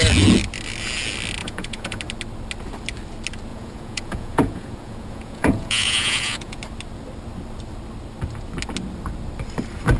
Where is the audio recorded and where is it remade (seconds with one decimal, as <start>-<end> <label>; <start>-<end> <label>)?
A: 0.0-1.4 recorded; 1.4-2.0 remade; 2.0-3.5 recorded; 3.5-6.6 remade; 6.6-10.0 recorded